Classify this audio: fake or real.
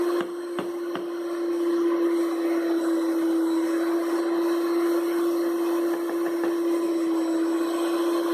real